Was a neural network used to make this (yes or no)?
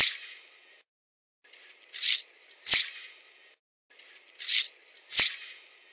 no